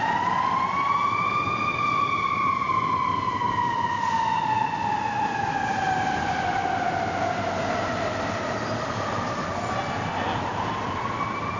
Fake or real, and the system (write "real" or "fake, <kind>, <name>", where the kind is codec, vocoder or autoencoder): real